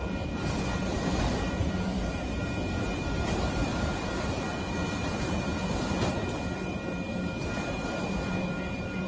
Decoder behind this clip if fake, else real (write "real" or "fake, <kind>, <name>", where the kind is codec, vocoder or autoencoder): fake, vocoder, BigVGAN v2